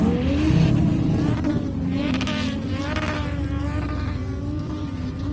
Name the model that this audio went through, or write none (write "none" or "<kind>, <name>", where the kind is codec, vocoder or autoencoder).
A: none